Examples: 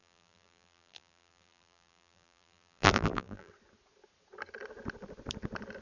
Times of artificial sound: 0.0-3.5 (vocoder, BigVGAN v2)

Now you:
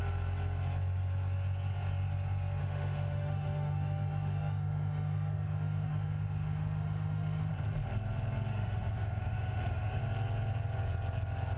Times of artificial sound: 2.6-7.5 (autoencoder, DAC-VAE); 8.5-10.0

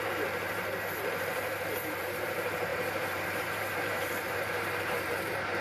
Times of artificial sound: 0.0-1.5 (vocoder, BigVGAN v2); 2.0-5.6

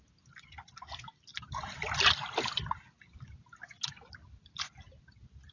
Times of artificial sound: none

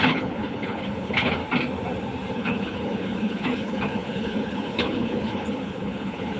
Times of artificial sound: 0.0-1.4 (codec, HILCodec); 2.3-6.4

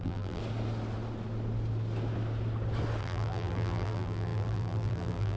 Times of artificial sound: 0.0-0.4 (vocoder, BigVGAN v2); 3.0-5.4